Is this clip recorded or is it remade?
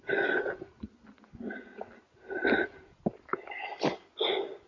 recorded